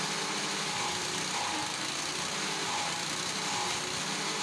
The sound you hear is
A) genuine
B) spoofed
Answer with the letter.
A